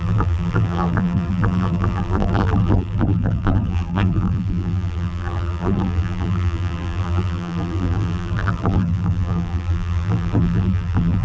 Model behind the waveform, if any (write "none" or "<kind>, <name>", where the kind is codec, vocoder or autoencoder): vocoder, BigVGAN v2